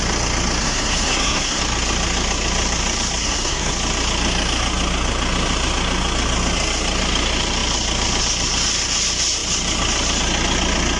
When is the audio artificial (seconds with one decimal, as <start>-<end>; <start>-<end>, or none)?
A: 0.6-1.6; 3.2-3.7